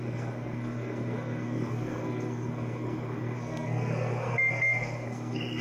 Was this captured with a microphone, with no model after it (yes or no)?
no